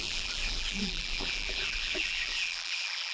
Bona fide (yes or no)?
no